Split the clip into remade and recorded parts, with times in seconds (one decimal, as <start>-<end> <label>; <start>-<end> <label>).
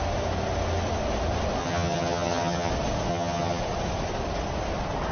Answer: 0.0-1.6 recorded; 1.6-2.7 remade; 2.7-3.1 recorded; 3.1-3.6 remade; 3.6-5.1 recorded